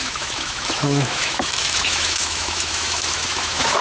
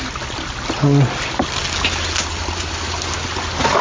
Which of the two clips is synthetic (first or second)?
first